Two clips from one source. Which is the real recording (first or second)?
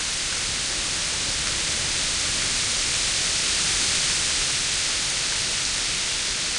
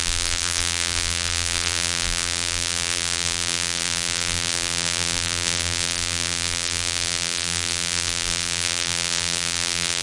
first